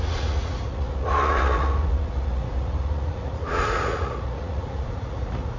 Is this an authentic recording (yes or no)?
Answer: no